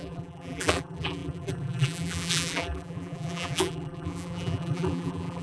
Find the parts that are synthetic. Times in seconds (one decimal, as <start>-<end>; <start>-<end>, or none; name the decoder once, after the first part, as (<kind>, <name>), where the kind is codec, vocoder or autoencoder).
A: 0.0-5.4 (vocoder, BigVGAN v2)